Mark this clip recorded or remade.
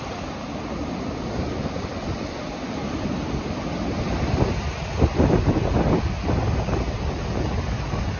recorded